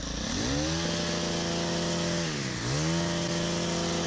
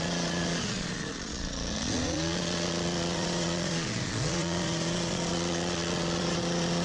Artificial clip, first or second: second